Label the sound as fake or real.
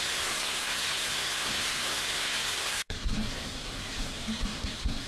fake